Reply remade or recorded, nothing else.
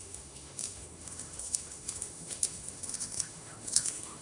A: remade